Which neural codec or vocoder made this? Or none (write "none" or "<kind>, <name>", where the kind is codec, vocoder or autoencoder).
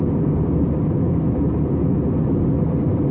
none